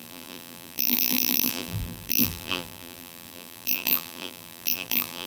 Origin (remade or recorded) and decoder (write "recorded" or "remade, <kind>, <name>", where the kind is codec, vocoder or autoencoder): remade, vocoder, BigVGAN v2